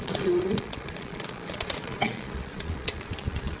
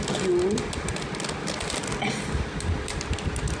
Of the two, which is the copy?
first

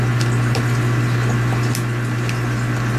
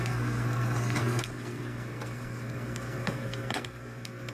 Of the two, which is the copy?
second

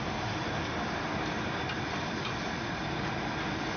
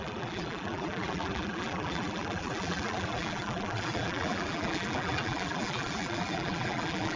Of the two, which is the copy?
second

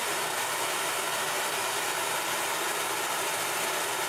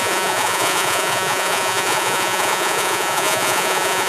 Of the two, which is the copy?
second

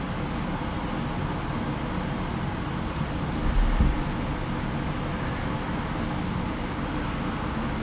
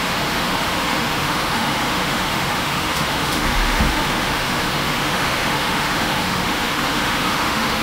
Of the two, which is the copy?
second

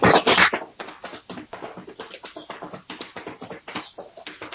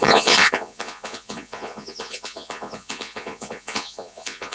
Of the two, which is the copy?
second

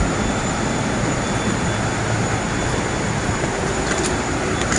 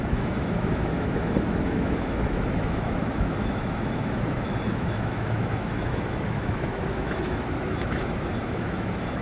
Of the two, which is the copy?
second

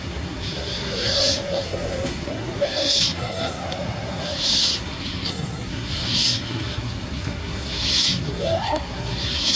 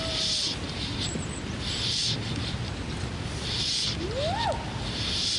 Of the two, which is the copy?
first